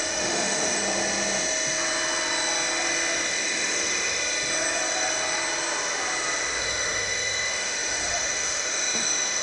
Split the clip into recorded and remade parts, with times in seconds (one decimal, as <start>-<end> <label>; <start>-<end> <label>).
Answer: 0.0-0.8 remade; 0.8-3.3 recorded; 3.3-4.2 remade; 4.2-6.6 recorded; 6.6-9.4 remade